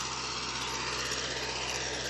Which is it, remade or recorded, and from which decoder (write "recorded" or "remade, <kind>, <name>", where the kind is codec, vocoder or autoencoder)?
recorded